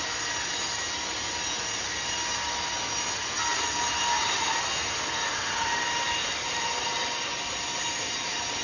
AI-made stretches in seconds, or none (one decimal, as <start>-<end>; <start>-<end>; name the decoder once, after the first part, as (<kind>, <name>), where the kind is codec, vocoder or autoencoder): none